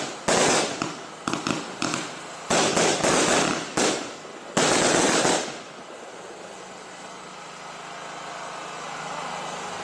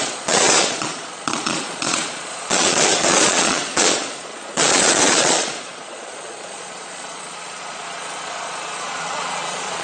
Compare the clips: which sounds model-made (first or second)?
second